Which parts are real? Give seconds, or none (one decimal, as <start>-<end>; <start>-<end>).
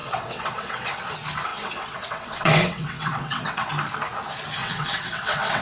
1.0-1.5; 3.7-4.6